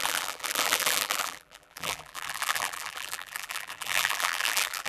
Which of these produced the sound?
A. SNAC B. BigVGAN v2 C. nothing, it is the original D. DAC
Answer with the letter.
B